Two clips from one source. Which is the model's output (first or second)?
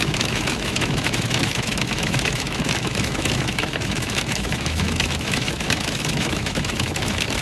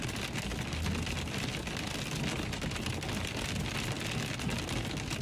first